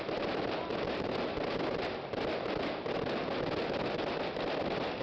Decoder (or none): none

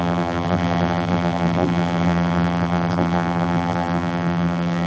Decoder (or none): vocoder, BigVGAN v2